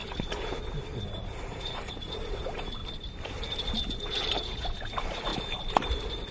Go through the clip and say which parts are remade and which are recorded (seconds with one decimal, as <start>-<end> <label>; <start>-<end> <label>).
0.0-1.0 recorded; 1.0-2.8 remade; 2.8-4.4 recorded; 4.4-5.3 remade; 5.3-6.3 recorded